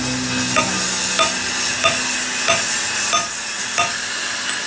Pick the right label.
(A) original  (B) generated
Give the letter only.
A